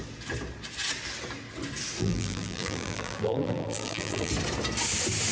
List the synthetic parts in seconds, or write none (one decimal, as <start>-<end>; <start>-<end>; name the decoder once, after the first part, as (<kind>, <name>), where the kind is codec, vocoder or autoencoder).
2.0-4.3 (vocoder, BigVGAN v2)